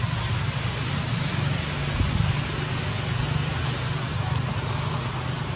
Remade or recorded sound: recorded